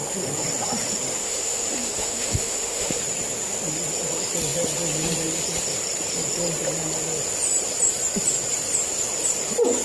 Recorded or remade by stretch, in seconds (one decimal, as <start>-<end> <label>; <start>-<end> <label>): 0.0-1.2 recorded; 1.2-3.0 remade; 3.0-9.8 recorded